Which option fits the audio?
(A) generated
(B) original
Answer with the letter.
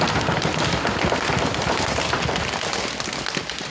B